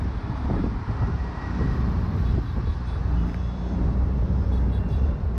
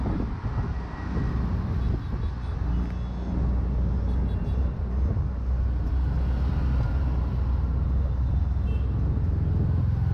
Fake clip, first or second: first